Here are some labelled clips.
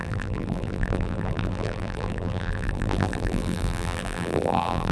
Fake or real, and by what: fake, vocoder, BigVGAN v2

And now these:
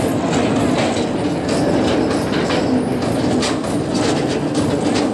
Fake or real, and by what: real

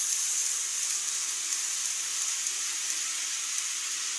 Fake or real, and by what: real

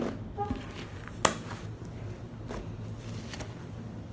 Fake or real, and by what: real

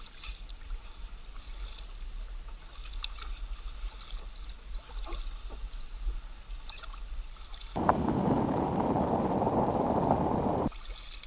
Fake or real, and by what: real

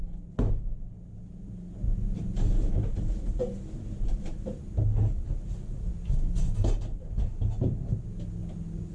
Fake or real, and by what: real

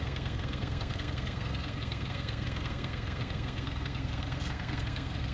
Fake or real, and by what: fake, codec, SNAC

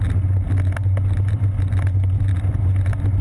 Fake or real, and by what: real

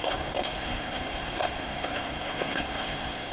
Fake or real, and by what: fake, codec, SNAC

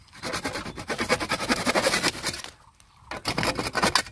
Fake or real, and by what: real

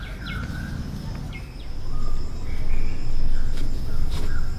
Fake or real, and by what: real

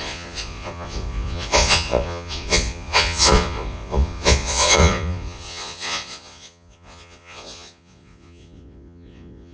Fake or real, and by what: fake, vocoder, Vocos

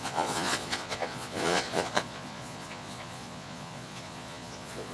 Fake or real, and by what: fake, vocoder, Vocos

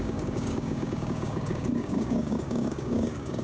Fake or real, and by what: fake, codec, DAC